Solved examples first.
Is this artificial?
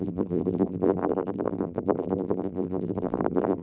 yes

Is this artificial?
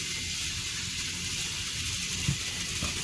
no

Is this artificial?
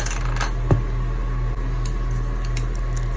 no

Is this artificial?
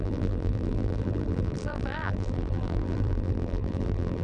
yes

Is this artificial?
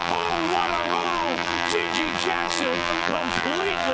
yes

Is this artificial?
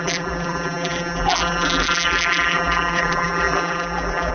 yes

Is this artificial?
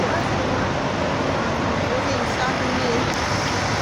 no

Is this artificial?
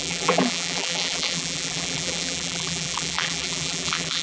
yes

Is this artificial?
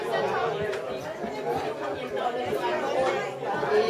no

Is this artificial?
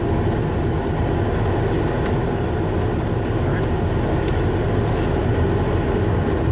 no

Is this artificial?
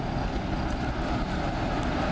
no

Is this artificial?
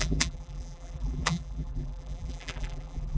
yes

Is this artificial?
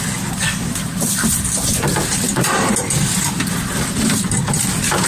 yes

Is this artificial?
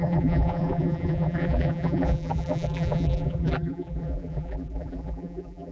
yes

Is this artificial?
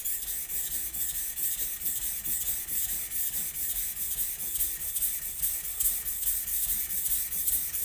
no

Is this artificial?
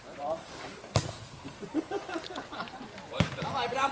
yes